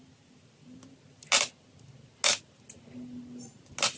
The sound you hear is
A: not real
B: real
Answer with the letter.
B